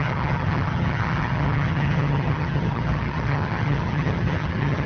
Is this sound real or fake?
fake